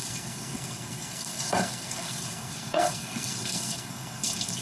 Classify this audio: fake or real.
fake